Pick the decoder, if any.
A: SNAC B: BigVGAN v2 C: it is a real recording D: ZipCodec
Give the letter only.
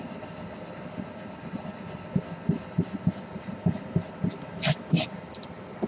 C